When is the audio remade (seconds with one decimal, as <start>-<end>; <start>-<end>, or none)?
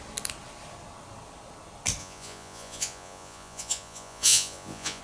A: 2.0-5.0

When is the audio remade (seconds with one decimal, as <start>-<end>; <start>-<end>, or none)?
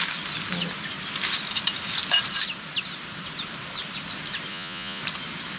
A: 4.5-5.0